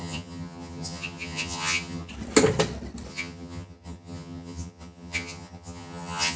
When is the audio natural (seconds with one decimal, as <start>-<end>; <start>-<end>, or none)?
2.1-3.1